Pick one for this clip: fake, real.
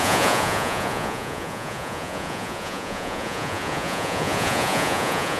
fake